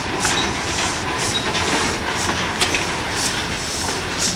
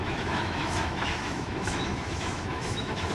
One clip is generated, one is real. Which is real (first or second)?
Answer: first